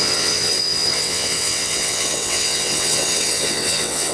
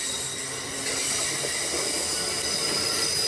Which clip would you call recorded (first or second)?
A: second